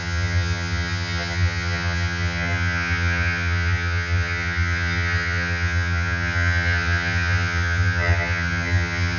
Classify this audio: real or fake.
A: fake